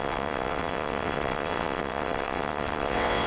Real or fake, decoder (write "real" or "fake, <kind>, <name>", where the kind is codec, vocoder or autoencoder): fake, vocoder, WaveNeXt